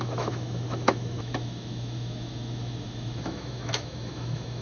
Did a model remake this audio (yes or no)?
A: yes